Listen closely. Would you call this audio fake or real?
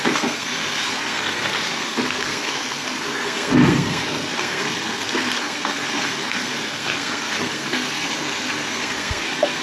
fake